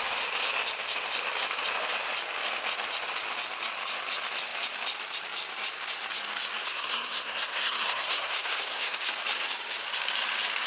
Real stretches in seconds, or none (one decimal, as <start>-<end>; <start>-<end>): 0.0-6.6; 9.1-10.7